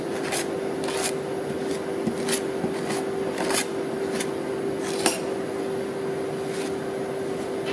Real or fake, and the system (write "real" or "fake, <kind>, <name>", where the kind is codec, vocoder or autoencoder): real